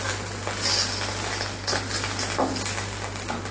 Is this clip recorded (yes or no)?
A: yes